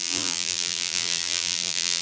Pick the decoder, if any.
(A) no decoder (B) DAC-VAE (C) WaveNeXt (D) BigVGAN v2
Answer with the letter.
D